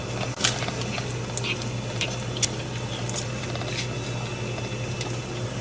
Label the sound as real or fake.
real